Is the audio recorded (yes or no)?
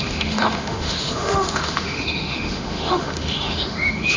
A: no